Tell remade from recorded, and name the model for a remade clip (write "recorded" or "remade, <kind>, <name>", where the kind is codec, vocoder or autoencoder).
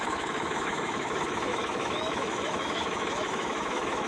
remade, autoencoder, DAC-VAE